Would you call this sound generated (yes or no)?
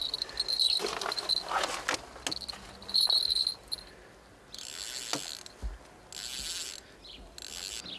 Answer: no